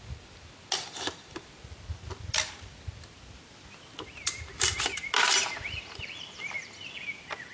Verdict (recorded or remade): recorded